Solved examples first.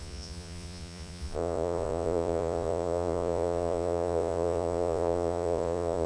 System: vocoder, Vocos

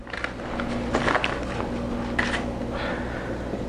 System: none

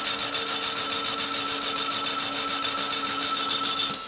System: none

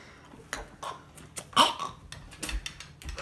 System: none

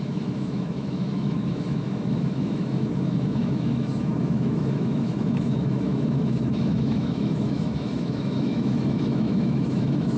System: autoencoder, DAC-VAE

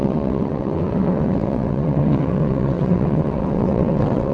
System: vocoder, WaveNeXt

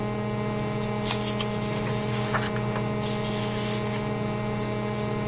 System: none